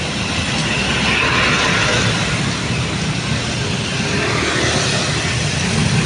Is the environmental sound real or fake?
real